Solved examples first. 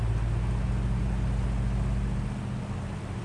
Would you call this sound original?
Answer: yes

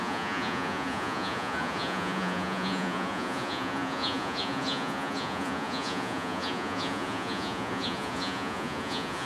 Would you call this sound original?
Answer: no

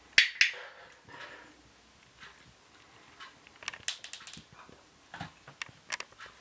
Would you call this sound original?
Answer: yes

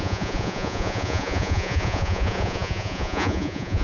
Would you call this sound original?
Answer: no